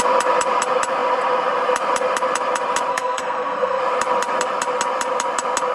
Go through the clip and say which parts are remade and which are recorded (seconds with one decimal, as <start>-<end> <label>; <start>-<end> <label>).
0.0-2.9 recorded; 2.9-3.8 remade; 3.8-5.7 recorded